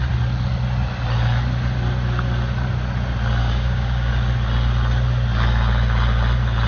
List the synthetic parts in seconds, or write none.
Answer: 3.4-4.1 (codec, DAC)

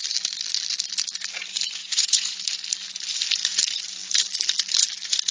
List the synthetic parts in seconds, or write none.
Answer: 1.8-2.4 (vocoder, Vocos)

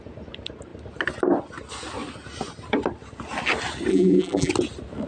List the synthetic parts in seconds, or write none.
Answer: 3.9-4.5 (vocoder, BigVGAN v2)

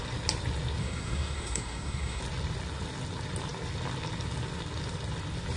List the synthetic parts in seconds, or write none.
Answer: 0.8-2.2 (codec, SNAC)